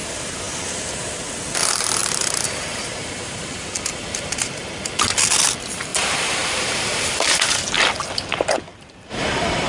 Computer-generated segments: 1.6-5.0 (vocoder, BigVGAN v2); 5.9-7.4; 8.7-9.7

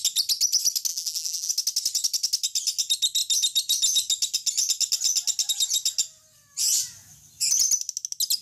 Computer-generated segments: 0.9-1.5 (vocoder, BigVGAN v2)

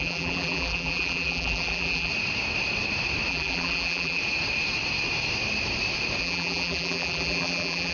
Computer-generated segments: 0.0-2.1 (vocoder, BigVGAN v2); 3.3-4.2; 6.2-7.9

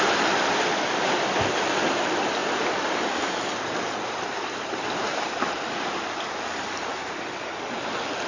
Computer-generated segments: 0.0-8.3 (vocoder, BigVGAN v2)

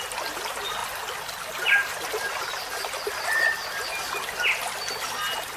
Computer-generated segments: none

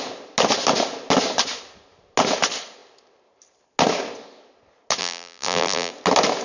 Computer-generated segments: 5.0-5.9 (vocoder, BigVGAN v2)